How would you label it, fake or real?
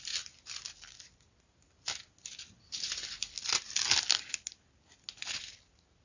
real